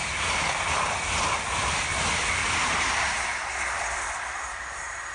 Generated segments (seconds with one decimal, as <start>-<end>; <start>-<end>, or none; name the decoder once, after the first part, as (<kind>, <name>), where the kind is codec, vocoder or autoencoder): none